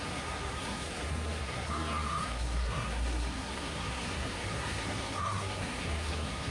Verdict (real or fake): fake